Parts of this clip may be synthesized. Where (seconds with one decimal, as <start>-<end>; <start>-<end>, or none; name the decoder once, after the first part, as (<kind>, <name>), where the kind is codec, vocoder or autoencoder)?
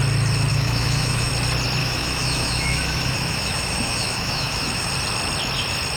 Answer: 0.5-1.3 (autoencoder, DAC-VAE); 1.8-4.9